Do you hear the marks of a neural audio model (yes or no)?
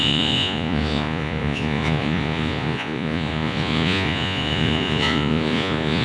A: yes